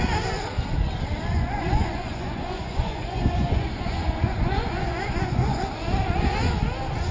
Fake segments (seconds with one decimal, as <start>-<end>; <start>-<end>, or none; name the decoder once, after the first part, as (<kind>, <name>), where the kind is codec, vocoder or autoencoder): 1.3-5.6 (vocoder, Vocos)